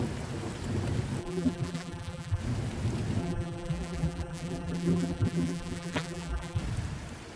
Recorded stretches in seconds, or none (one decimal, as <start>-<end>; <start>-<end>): 0.0-1.2; 2.4-3.2; 6.6-7.4